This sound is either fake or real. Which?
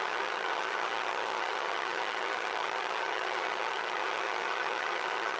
fake